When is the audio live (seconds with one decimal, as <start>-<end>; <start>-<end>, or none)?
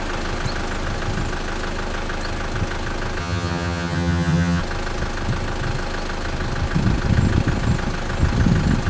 0.0-3.2; 4.6-8.9